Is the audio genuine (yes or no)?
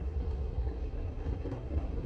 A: no